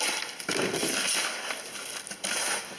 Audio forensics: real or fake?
real